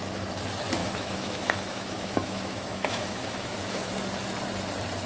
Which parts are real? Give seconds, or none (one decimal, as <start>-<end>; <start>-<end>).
0.0-0.8; 3.9-5.1

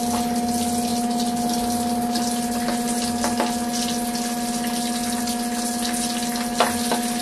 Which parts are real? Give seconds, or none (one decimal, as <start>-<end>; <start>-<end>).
0.0-7.2

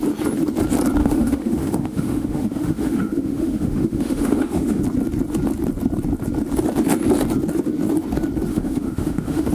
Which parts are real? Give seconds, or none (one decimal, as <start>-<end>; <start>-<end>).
0.0-1.0; 4.8-8.5

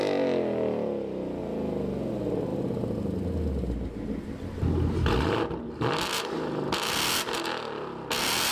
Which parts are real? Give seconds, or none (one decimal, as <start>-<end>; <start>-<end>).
0.0-8.5

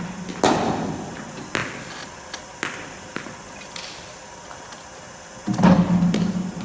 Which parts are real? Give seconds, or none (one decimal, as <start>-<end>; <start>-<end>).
0.0-6.6

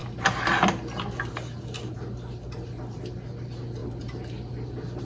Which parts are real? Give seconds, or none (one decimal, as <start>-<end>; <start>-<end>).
0.0-5.0

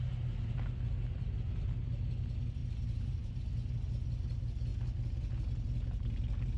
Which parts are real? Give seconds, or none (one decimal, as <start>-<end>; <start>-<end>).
0.0-2.6; 3.4-6.6

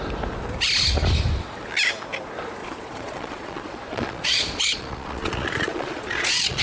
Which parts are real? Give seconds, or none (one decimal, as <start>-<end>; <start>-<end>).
0.0-2.6